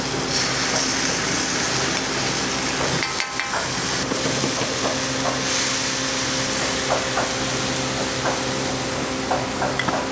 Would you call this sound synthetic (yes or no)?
no